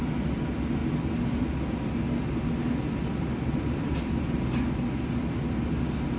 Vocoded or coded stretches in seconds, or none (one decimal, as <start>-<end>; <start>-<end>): none